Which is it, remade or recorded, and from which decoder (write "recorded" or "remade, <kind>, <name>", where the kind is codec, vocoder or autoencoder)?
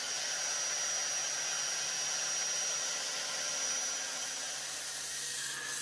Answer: recorded